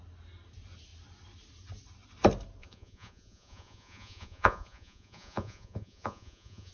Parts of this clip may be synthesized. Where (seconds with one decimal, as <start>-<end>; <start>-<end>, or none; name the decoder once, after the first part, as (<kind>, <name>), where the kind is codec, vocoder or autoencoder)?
2.6-6.7 (vocoder, Vocos)